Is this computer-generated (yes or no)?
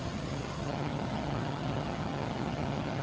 yes